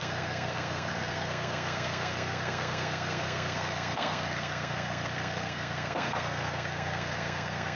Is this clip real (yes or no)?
no